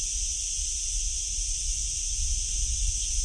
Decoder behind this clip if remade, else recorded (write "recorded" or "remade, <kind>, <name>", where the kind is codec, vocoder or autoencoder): recorded